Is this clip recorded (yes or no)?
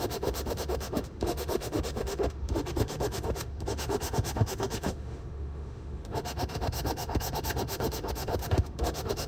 no